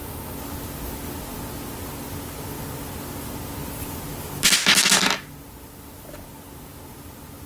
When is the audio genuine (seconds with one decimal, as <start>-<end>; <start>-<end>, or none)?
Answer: 0.0-7.5